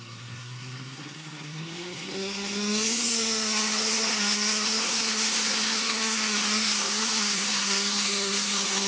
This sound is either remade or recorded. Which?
remade